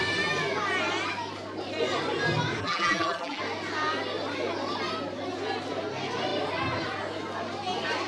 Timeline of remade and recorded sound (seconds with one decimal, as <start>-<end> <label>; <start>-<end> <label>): 0.0-2.6 recorded; 2.6-3.4 remade; 3.4-8.1 recorded